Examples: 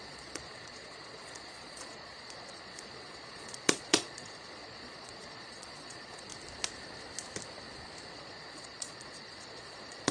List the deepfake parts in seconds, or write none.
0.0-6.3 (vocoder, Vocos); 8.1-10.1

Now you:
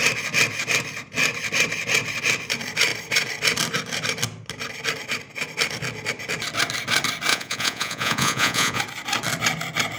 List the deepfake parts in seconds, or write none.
7.3-8.8 (vocoder, Vocos)